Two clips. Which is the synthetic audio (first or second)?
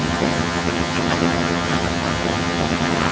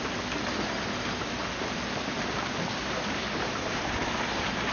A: first